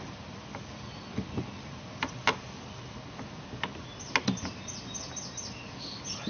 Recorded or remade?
recorded